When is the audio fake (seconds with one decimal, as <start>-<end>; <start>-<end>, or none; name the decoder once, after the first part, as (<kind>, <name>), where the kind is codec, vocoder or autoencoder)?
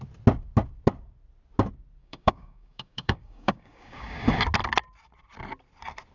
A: 2.0-4.4 (codec, DAC)